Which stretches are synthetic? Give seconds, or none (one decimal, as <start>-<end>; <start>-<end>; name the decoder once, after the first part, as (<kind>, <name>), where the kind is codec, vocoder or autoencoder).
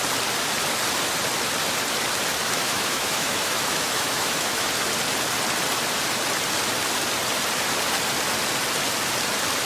2.4-4.7 (autoencoder, DAC-VAE)